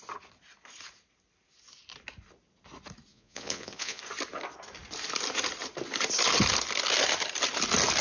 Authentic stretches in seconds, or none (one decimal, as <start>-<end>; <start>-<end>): 0.0-3.1; 4.0-8.0